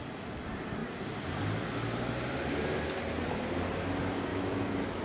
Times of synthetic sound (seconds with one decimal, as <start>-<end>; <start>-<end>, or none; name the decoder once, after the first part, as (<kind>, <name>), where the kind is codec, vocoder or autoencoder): 4.3-5.0 (autoencoder, DAC-VAE)